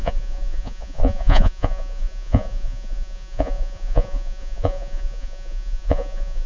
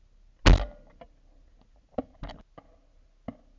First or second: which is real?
second